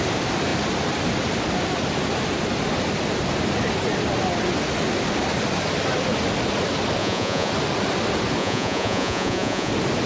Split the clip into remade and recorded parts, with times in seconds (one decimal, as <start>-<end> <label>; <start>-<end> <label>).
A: 0.0-7.0 recorded; 7.0-7.5 remade; 7.5-8.4 recorded; 8.4-9.7 remade; 9.7-10.1 recorded